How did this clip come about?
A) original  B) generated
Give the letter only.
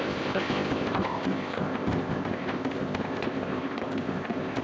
B